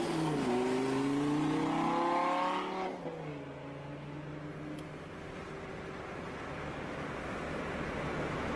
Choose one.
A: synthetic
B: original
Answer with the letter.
B